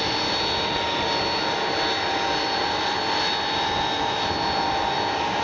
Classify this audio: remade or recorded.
recorded